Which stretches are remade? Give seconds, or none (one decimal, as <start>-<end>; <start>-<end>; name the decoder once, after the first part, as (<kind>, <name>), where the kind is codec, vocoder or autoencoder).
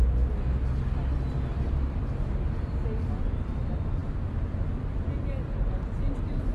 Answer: none